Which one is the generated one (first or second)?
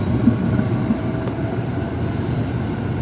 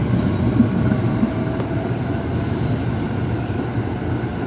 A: first